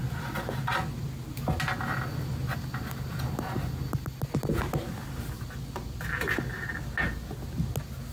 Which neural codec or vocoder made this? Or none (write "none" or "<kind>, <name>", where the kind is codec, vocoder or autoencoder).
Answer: none